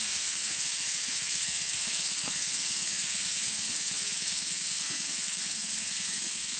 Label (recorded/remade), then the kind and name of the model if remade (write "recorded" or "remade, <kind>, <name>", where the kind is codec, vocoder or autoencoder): remade, codec, SNAC